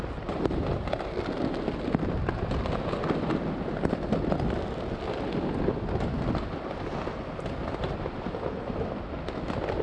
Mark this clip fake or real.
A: real